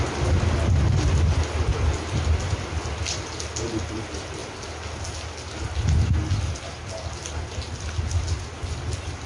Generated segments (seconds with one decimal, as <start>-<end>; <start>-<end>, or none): none